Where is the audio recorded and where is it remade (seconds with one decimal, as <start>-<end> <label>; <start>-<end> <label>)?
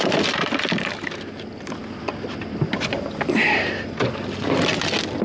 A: 0.0-5.2 recorded